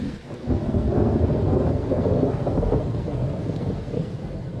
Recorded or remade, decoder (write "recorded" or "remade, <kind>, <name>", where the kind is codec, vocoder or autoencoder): remade, codec, SNAC